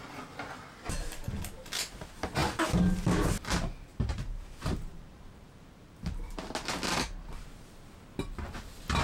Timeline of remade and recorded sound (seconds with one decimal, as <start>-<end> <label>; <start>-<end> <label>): 0.0-3.9 recorded; 3.9-6.3 remade; 6.3-9.0 recorded